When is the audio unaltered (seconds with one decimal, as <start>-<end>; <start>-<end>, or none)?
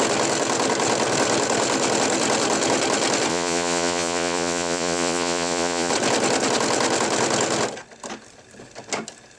0.0-3.3; 5.9-9.4